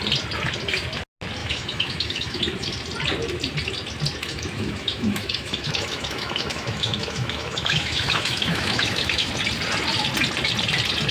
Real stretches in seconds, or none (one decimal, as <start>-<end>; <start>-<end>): 0.0-1.4; 2.4-4.3; 9.3-11.1